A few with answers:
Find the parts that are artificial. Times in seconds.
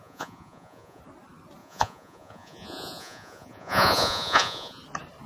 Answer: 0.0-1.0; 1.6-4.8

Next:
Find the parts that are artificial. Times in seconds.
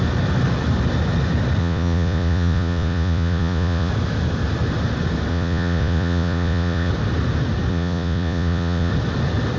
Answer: 1.6-3.9; 5.3-6.9; 7.7-8.9